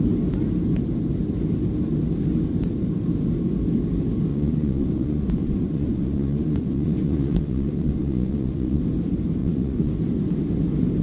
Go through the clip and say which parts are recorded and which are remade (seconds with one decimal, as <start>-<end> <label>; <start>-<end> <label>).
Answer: 0.0-4.3 recorded; 4.3-8.8 remade; 8.8-9.4 recorded; 9.4-9.9 remade; 9.9-11.0 recorded